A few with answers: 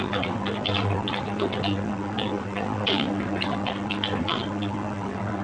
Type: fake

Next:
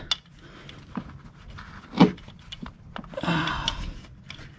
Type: real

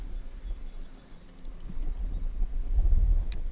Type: real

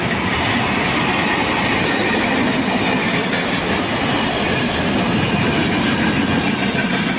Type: real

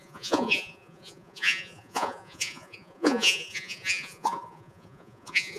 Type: fake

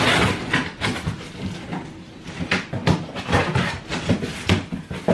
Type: real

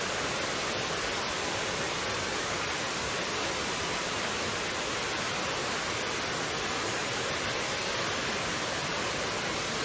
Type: real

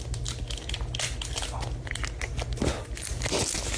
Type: real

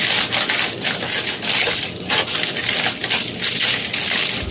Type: real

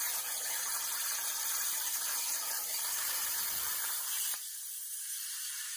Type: fake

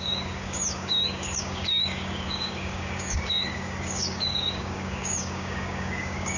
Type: fake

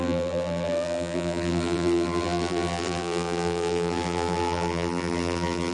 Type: fake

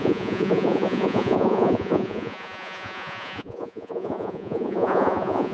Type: fake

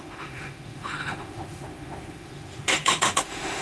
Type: fake